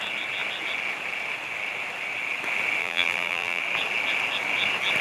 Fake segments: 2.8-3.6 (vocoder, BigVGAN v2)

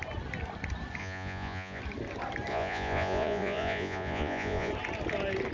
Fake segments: 1.0-1.8 (vocoder, Vocos); 2.5-4.7

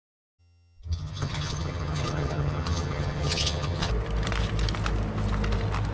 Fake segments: 0.4-3.9 (vocoder, HiFi-GAN)